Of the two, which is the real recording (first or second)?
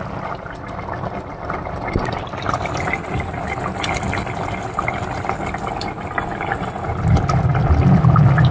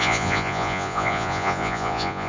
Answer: first